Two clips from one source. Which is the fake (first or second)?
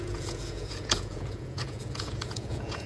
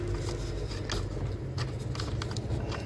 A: first